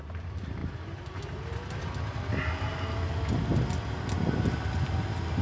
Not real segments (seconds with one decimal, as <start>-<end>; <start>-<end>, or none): none